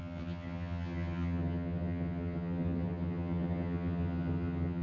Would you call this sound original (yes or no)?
no